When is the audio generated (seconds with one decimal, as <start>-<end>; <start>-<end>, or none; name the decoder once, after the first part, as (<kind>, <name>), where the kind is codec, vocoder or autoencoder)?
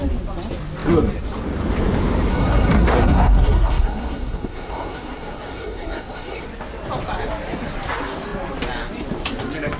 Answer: 2.3-6.4 (codec, SNAC)